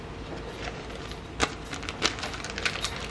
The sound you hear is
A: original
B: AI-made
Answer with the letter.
A